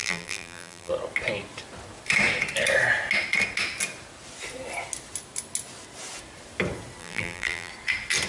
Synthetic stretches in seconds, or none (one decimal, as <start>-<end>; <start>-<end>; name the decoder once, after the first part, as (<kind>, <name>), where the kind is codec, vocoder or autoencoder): 0.0-0.9 (vocoder, BigVGAN v2); 7.0-7.7